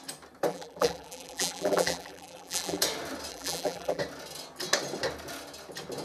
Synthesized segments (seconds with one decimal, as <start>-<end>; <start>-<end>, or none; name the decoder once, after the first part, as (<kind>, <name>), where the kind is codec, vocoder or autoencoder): 0.5-2.8 (vocoder, BigVGAN v2); 3.3-4.0

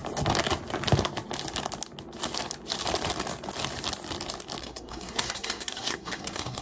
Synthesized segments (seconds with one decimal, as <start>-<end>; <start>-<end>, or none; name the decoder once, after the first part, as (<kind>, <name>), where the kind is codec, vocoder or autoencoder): 4.6-6.6 (codec, SNAC)

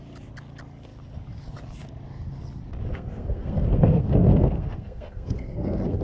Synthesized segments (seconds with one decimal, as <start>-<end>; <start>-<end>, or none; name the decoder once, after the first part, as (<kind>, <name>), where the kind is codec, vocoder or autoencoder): 2.9-6.0 (codec, SNAC)

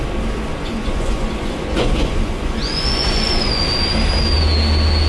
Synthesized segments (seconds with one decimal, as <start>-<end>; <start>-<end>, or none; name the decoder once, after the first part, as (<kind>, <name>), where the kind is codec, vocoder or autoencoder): 0.5-3.6 (vocoder, Vocos)

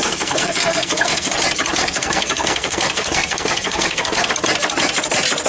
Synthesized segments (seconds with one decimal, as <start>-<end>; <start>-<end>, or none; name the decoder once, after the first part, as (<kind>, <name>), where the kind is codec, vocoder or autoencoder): 0.0-1.3 (codec, SNAC); 1.8-4.3

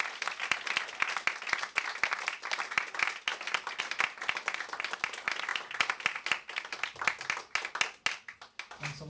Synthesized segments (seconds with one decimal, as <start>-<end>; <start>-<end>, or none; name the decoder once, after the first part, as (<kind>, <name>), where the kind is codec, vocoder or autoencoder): none

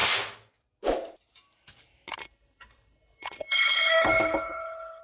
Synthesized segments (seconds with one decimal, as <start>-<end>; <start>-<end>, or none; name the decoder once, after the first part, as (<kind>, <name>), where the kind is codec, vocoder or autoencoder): 2.2-5.0 (codec, HILCodec)